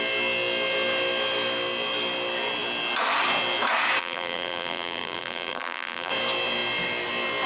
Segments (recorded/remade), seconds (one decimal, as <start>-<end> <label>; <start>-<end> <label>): 0.0-4.0 recorded; 4.0-6.1 remade; 6.1-7.5 recorded